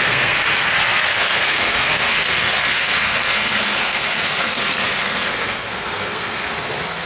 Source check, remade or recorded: remade